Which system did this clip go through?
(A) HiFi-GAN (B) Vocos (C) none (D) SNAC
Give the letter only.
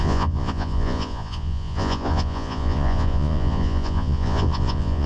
B